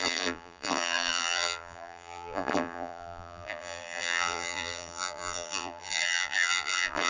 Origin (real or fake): fake